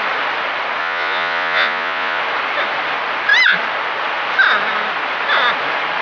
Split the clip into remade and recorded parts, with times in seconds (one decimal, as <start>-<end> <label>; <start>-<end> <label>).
0.0-0.8 recorded; 0.8-2.2 remade; 2.2-6.0 recorded